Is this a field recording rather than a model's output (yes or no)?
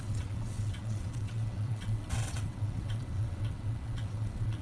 no